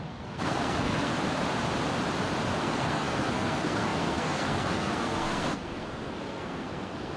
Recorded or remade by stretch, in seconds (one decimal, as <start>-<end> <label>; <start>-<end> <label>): 0.0-1.1 remade; 1.1-2.6 recorded; 2.6-7.2 remade